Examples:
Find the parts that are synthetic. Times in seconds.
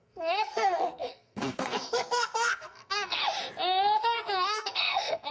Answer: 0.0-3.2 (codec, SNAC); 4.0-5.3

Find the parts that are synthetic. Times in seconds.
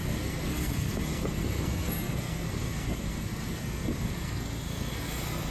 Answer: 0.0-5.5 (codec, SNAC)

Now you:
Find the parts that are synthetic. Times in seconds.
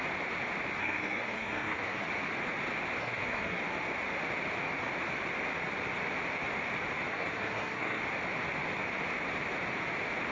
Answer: 0.8-2.1 (codec, SNAC); 3.0-3.6; 7.1-8.0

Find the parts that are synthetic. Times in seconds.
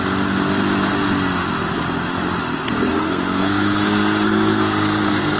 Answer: 2.9-5.4 (codec, SNAC)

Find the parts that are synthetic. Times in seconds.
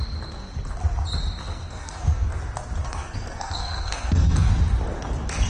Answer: 1.5-2.3 (codec, SNAC); 2.8-4.5